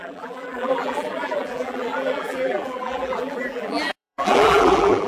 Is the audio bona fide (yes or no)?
no